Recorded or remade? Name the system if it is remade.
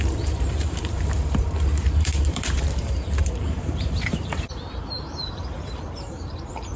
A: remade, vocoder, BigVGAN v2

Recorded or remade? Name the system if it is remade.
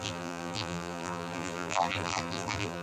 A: remade, vocoder, BigVGAN v2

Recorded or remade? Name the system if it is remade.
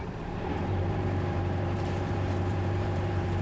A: remade, vocoder, BigVGAN v2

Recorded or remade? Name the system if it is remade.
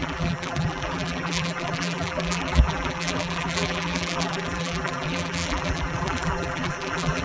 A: remade, vocoder, BigVGAN v2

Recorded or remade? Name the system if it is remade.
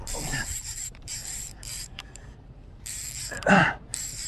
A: remade, vocoder, BigVGAN v2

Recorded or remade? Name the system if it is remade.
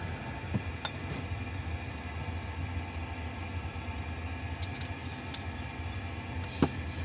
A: recorded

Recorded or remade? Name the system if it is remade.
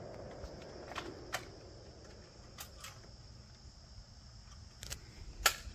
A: recorded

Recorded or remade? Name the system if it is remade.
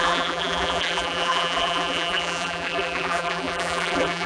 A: remade, vocoder, BigVGAN v2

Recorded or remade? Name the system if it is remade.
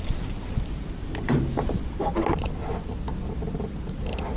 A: recorded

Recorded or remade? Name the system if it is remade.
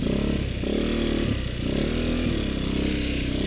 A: recorded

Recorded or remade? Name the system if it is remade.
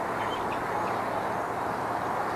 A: recorded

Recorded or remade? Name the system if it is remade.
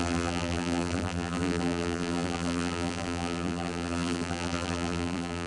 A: remade, vocoder, BigVGAN v2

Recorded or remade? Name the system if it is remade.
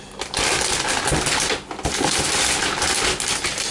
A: recorded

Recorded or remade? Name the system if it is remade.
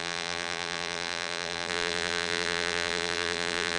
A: remade, vocoder, BigVGAN v2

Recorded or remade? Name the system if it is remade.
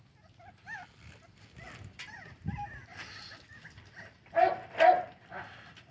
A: recorded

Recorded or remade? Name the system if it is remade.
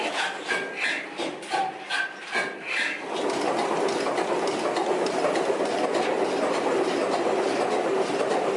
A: recorded